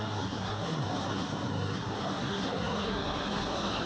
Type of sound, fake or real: fake